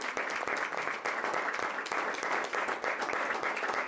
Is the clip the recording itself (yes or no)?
yes